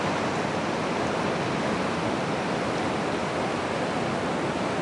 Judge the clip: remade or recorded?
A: recorded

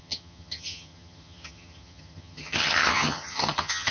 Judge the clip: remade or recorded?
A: remade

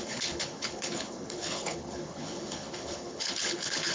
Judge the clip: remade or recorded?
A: remade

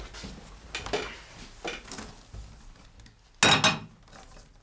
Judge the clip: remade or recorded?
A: recorded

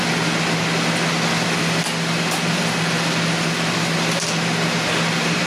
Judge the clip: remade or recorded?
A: recorded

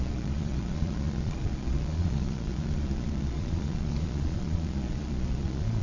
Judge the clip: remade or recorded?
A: remade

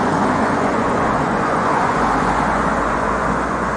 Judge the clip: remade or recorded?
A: remade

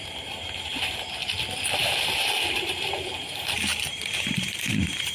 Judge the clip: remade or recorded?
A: remade